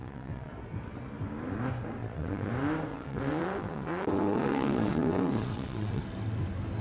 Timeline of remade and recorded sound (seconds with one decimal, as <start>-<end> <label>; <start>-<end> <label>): 0.0-0.5 remade; 0.5-2.0 recorded; 2.0-2.5 remade; 2.5-2.9 recorded; 2.9-6.0 remade; 6.0-6.8 recorded